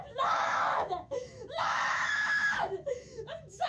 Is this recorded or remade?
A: remade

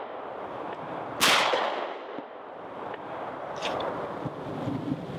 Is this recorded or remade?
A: recorded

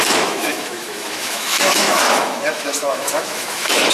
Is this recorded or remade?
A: remade